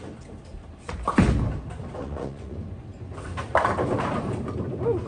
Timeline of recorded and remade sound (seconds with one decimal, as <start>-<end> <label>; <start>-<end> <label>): 0.0-2.0 recorded; 2.0-2.8 remade; 2.8-5.1 recorded